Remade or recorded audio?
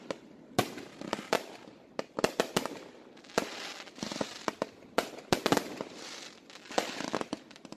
recorded